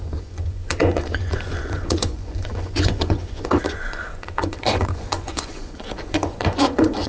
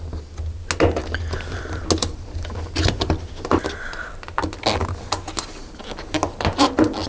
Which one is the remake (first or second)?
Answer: first